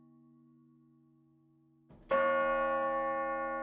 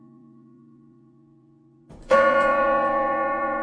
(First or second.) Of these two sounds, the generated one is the second